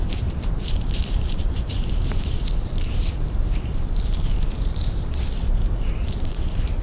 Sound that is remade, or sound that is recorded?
remade